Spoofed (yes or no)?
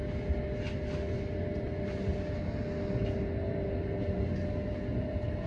no